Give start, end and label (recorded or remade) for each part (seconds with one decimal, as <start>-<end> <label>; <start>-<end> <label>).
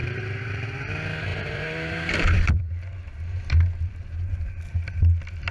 0.0-0.9 remade; 0.9-1.3 recorded; 1.3-4.6 remade; 4.6-5.5 recorded